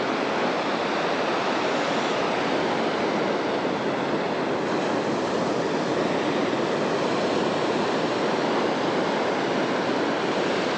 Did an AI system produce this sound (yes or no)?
no